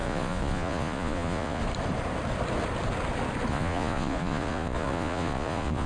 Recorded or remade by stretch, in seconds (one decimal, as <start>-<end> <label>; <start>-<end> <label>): 0.0-1.6 remade; 1.6-3.5 recorded; 3.5-5.9 remade